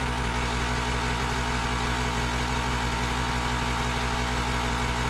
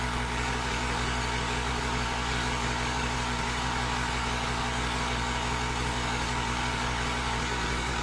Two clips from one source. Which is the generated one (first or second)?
second